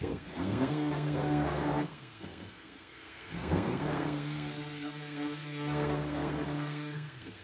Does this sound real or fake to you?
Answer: fake